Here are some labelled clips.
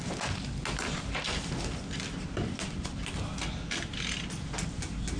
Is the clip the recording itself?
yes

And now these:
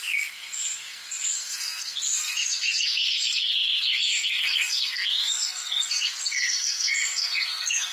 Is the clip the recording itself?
no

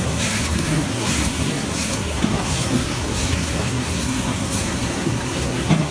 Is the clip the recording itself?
no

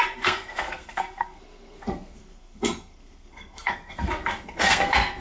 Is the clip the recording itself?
no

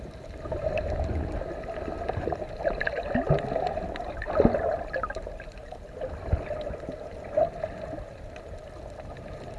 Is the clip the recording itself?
yes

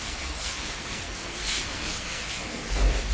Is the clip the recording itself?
no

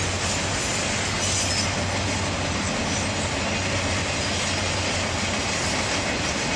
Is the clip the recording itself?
yes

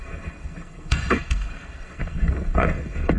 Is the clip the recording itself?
no